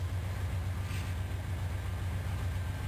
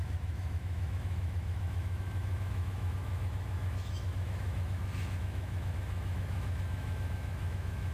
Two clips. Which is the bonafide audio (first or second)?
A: first